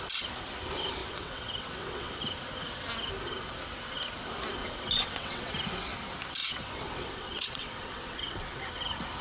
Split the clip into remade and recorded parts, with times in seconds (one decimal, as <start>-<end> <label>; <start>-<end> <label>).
0.0-1.0 recorded; 1.0-2.1 remade; 2.1-4.6 recorded; 4.6-5.5 remade; 5.5-6.4 recorded; 6.4-8.6 remade; 8.6-9.2 recorded